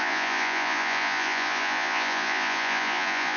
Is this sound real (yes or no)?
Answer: no